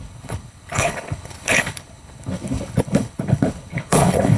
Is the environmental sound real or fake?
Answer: fake